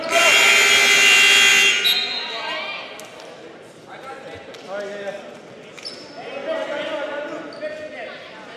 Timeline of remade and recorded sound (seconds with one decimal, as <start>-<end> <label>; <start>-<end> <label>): 0.0-8.6 recorded